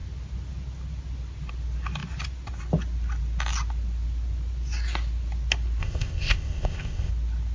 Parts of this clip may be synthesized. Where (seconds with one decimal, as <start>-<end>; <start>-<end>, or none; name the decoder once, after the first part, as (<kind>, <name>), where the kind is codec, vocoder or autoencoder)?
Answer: 5.8-7.1 (codec, ZipCodec)